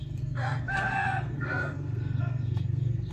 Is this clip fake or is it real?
fake